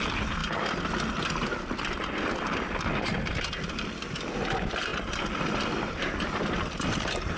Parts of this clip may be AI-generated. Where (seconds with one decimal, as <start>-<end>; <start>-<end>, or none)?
none